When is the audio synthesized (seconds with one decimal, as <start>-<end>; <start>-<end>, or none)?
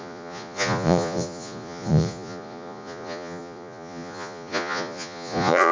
0.0-5.7